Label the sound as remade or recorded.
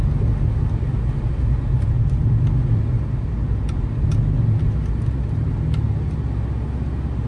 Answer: recorded